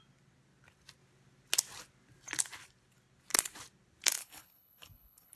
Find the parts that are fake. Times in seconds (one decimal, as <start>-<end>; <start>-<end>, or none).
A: 4.2-5.4